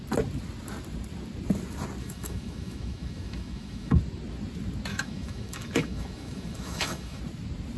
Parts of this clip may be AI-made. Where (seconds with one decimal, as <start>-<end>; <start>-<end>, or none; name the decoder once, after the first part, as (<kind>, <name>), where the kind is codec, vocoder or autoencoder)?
2.0-4.0 (autoencoder, DAC-VAE); 4.9-7.2

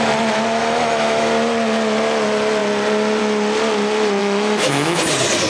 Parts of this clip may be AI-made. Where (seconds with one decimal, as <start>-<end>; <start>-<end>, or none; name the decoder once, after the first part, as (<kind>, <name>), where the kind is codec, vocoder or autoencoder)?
0.6-1.3 (autoencoder, DAC-VAE); 4.2-5.0

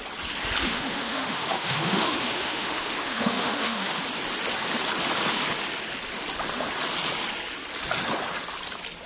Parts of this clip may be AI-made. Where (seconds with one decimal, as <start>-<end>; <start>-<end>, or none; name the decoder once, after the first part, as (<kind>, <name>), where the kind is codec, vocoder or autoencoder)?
0.6-4.0 (autoencoder, DAC-VAE)

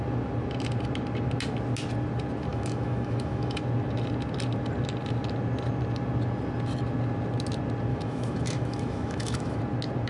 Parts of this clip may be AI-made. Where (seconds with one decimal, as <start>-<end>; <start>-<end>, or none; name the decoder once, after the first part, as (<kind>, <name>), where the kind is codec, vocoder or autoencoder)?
2.5-3.6 (autoencoder, DAC-VAE); 7.9-9.6

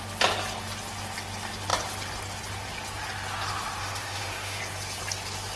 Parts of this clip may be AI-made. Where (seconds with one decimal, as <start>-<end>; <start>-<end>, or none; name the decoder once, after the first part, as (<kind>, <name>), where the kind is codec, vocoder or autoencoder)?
3.8-4.6 (autoencoder, DAC-VAE)

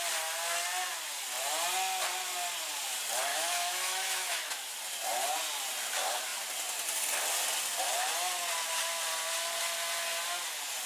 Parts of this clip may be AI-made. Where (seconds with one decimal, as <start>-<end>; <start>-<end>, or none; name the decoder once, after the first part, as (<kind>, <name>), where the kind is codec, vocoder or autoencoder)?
3.3-4.7 (autoencoder, DAC-VAE)

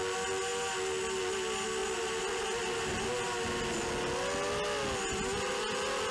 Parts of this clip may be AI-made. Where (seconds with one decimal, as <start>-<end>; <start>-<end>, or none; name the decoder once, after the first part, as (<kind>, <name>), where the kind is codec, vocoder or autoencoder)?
none